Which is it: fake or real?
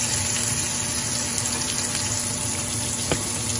real